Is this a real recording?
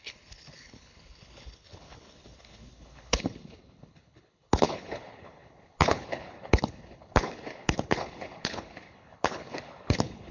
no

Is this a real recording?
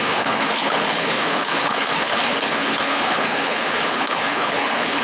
no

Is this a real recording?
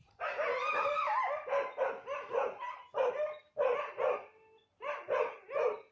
yes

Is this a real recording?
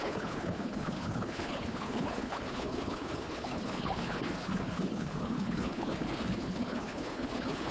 no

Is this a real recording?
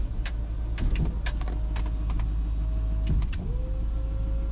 yes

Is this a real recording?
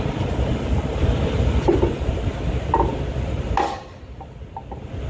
yes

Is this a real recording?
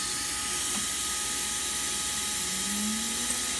yes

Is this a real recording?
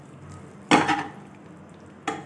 yes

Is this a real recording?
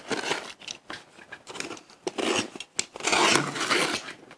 yes